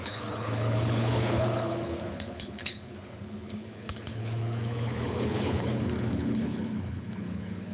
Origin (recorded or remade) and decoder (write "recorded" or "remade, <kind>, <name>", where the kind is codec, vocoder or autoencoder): remade, codec, HILCodec